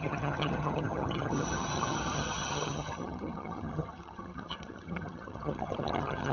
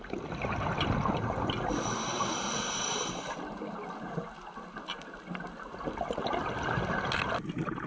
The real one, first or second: second